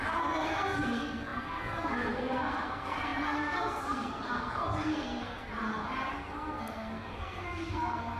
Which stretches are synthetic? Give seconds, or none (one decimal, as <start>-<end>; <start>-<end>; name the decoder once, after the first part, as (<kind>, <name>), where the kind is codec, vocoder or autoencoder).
0.0-5.5 (codec, SNAC); 6.1-8.2